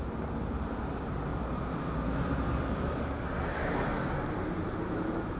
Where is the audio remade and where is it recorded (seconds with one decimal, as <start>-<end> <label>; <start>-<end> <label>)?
0.0-1.3 remade; 1.3-4.2 recorded; 4.2-5.4 remade